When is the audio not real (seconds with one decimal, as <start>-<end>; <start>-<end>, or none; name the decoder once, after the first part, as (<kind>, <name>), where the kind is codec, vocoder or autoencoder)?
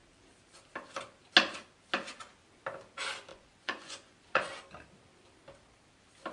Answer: 3.3-4.6 (vocoder, Vocos)